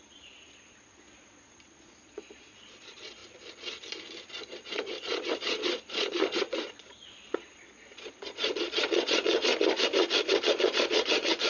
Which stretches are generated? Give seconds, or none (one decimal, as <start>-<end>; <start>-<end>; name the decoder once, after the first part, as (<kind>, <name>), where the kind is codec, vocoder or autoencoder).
0.0-3.2 (vocoder, Vocos); 4.4-9.5; 10.5-11.5

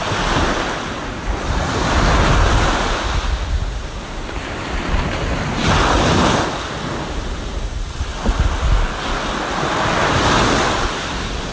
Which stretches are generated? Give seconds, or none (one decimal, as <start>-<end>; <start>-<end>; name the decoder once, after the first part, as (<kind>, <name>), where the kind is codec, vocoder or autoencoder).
none

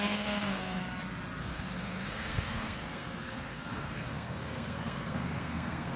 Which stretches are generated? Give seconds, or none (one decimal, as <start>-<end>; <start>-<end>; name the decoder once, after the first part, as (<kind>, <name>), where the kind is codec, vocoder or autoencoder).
0.0-0.8 (codec, SNAC); 1.4-6.0